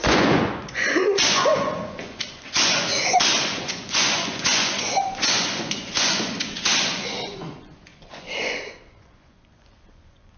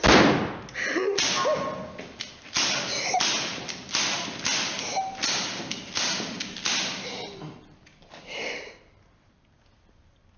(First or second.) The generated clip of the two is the first